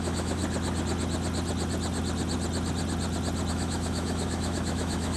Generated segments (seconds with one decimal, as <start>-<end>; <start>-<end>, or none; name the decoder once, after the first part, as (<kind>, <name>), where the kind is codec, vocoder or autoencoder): 0.0-0.4 (autoencoder, DAC-VAE); 3.5-5.2